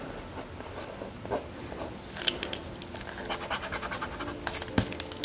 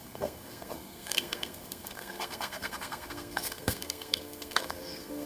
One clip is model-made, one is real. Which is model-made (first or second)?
second